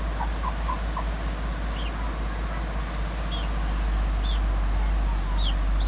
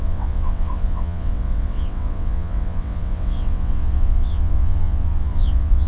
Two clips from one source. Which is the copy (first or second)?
second